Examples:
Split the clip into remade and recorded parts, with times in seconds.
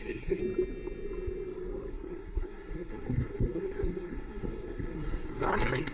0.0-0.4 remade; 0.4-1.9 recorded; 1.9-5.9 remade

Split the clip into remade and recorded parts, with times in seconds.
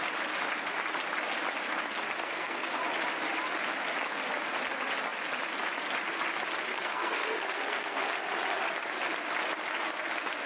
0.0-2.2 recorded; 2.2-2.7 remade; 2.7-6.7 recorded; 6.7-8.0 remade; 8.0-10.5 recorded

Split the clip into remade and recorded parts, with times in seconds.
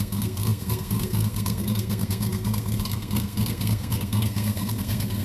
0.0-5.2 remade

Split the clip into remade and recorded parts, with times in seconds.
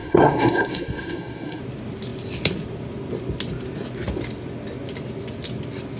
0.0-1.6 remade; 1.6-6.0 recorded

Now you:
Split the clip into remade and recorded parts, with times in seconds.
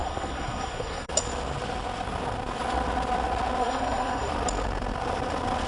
0.0-1.1 remade; 1.1-3.6 recorded; 3.6-4.3 remade; 4.3-5.7 recorded